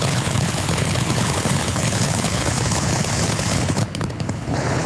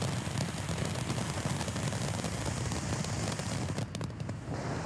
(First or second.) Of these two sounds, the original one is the second